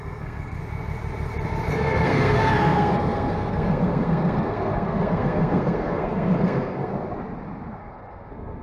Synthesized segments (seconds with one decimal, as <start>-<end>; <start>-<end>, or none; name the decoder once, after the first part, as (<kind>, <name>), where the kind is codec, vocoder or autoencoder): 0.0-0.6 (codec, SNAC); 1.7-6.9; 7.8-8.6